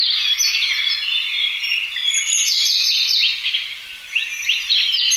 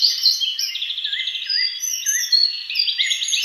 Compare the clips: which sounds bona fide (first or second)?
second